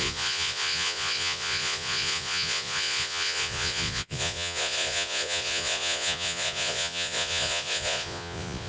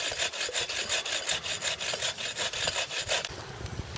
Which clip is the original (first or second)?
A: second